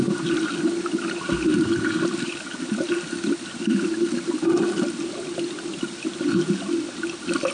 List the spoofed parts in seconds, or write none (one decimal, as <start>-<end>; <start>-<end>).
none